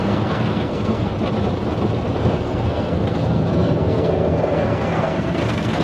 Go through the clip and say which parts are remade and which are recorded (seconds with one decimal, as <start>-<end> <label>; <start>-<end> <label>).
0.0-1.1 remade; 1.1-2.2 recorded; 2.2-5.8 remade

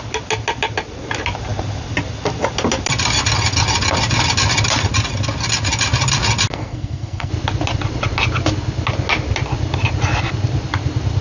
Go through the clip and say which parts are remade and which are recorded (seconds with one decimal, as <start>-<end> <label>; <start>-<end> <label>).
0.0-6.5 recorded; 6.5-7.3 remade; 7.3-11.2 recorded

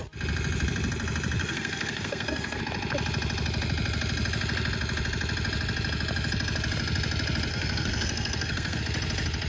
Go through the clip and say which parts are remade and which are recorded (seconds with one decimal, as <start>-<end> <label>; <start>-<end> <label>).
0.0-1.4 recorded; 1.4-2.6 remade; 2.6-7.5 recorded; 7.5-8.8 remade; 8.8-9.5 recorded

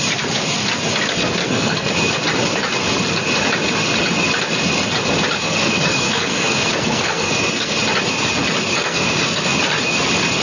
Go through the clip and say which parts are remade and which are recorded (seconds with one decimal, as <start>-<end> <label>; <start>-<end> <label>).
0.0-1.4 recorded; 1.4-1.9 remade; 1.9-5.4 recorded; 5.4-7.8 remade; 7.8-8.7 recorded; 8.7-9.4 remade; 9.4-10.4 recorded

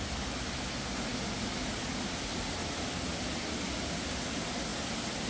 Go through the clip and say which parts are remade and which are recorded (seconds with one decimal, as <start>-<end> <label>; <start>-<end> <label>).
0.0-5.3 recorded

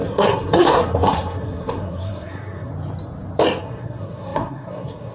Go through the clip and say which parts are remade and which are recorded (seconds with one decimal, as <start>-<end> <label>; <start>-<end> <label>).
0.0-2.7 remade; 2.7-3.6 recorded; 3.6-5.1 remade

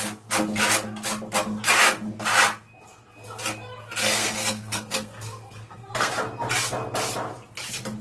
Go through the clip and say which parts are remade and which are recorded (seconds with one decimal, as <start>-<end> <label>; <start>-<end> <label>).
0.0-4.0 recorded; 4.0-6.1 remade; 6.1-8.0 recorded